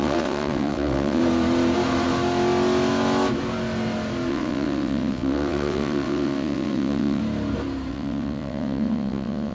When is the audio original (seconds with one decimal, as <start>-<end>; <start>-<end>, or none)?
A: 1.2-4.3; 7.2-7.9